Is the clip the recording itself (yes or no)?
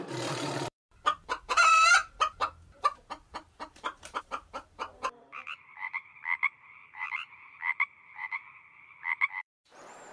no